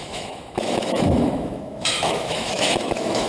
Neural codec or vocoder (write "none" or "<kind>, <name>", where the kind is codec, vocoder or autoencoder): autoencoder, DAC-VAE